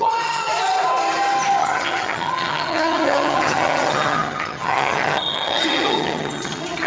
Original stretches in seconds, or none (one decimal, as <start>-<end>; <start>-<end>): 0.5-1.6